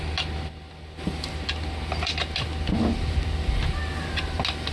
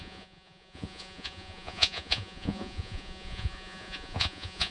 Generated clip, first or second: second